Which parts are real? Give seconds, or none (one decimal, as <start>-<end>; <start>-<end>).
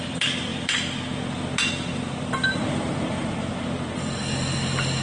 0.0-5.0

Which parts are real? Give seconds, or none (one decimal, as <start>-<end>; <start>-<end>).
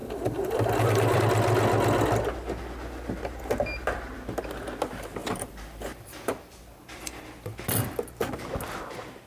1.2-5.2; 7.2-9.3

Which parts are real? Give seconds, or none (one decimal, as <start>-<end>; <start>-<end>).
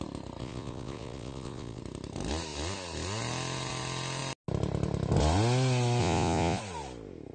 0.0-0.4; 1.8-6.0; 6.6-7.3